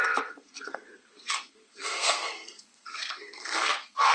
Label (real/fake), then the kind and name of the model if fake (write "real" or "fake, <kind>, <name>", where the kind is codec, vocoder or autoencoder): fake, codec, SNAC